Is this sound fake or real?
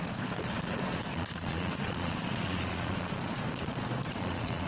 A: fake